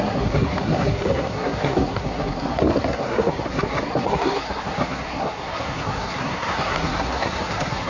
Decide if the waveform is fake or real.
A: fake